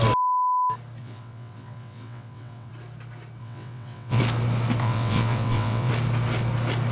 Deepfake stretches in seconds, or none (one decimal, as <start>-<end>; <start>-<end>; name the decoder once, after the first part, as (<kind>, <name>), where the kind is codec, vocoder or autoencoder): 1.0-2.7 (vocoder, WaveNeXt); 3.4-4.2; 4.8-5.9